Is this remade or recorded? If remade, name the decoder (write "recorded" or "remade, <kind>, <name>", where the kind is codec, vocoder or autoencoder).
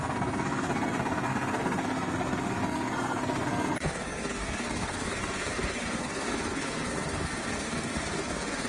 remade, codec, SNAC